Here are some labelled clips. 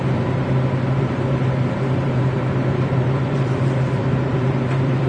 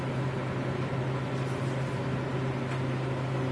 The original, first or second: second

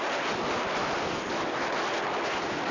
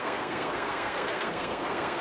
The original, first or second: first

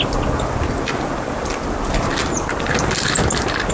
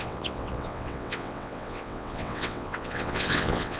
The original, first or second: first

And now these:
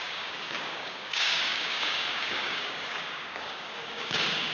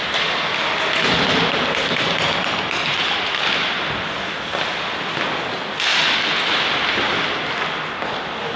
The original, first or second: second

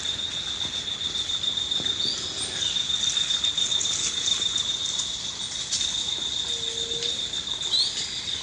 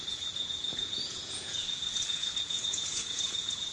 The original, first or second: first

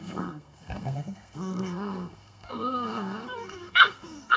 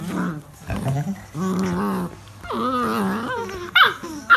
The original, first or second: second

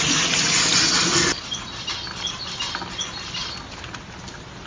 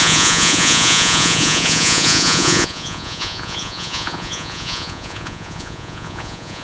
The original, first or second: first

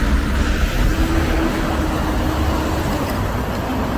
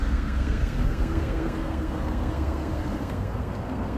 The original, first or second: first